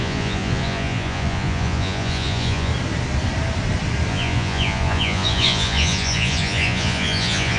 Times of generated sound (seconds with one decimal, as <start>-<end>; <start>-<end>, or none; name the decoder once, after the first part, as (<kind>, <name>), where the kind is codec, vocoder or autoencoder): 0.0-2.7 (vocoder, Vocos); 4.1-7.6